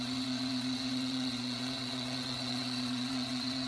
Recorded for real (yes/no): no